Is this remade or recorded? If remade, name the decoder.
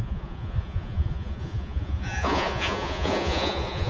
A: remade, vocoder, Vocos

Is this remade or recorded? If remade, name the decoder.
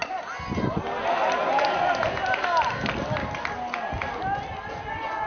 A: recorded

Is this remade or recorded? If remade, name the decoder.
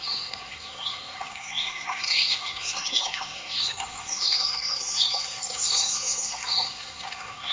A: remade, codec, SNAC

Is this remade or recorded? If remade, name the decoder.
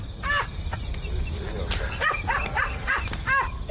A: recorded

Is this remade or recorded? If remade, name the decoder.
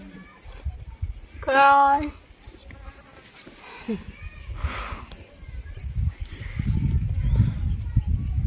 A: recorded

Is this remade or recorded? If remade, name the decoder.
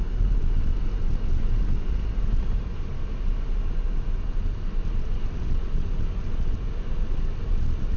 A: recorded